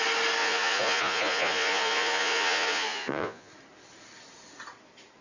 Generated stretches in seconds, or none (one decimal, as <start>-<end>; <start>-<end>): 0.4-3.5